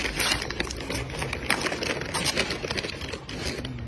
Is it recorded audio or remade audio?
recorded